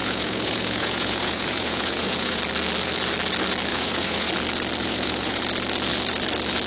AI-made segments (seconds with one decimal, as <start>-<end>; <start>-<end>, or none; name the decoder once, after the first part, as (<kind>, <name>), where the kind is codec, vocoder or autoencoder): 0.0-2.4 (vocoder, Vocos); 3.7-4.3; 4.8-5.4

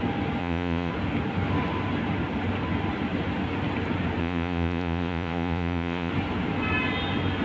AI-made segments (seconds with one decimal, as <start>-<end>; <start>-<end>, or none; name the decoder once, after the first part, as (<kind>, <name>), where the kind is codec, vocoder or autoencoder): 0.4-0.9 (vocoder, Vocos); 4.2-6.1

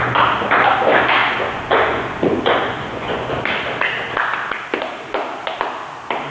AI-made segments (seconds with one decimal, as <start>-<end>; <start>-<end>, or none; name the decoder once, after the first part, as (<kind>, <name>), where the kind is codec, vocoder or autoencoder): 1.2-3.3 (vocoder, Vocos)